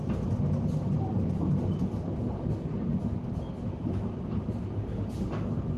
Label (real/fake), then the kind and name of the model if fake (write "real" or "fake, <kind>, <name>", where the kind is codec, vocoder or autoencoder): real